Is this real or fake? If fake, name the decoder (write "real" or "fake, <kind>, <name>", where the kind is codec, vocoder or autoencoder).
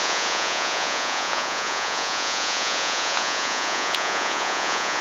fake, vocoder, Vocos